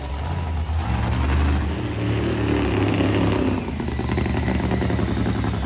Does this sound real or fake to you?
real